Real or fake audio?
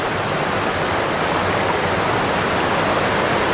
real